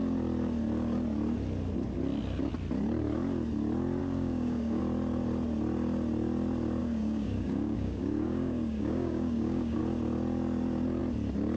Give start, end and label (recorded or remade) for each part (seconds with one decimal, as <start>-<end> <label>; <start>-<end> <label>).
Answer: 0.0-4.0 recorded; 4.0-4.8 remade; 4.8-6.8 recorded; 6.8-9.8 remade; 9.8-11.6 recorded

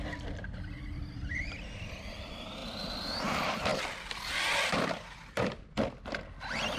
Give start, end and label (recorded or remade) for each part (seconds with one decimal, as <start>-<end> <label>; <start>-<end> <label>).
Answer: 0.0-3.7 remade; 3.7-4.8 recorded; 4.8-6.8 remade

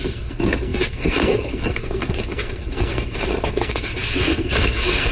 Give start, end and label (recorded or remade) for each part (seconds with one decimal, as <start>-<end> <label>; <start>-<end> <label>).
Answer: 0.0-5.1 remade

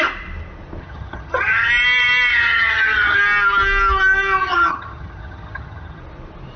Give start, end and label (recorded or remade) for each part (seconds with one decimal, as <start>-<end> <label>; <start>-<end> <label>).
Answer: 0.0-0.8 recorded; 0.8-1.7 remade; 1.7-2.3 recorded; 2.3-3.2 remade; 3.2-4.4 recorded; 4.4-6.0 remade; 6.0-6.6 recorded

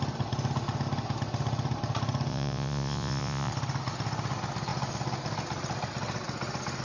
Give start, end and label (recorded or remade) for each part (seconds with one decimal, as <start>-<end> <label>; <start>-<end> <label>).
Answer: 0.0-2.3 recorded; 2.3-3.5 remade; 3.5-6.8 recorded

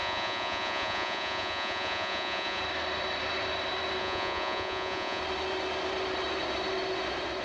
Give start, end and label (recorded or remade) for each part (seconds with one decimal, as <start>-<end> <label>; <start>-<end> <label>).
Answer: 0.0-2.6 remade; 2.6-4.0 recorded; 4.0-5.2 remade; 5.2-7.4 recorded

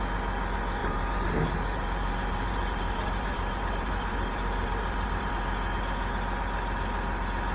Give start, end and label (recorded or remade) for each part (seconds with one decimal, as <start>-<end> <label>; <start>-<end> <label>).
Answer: 0.0-0.8 recorded; 0.8-5.3 remade; 5.3-7.5 recorded

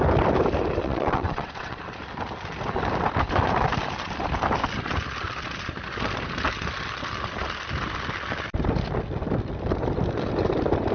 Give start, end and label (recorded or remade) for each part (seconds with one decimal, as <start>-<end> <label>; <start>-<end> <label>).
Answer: 0.0-0.8 recorded; 0.8-1.8 remade; 1.8-10.9 recorded